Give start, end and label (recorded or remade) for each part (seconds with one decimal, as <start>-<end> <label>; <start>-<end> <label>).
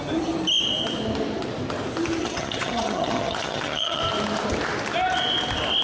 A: 0.0-2.2 recorded; 2.2-4.0 remade; 4.0-5.8 recorded